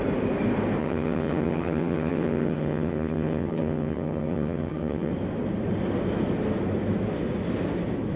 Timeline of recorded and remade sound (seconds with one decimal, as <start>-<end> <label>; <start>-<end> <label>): 0.0-0.8 recorded; 0.8-5.1 remade; 5.1-8.2 recorded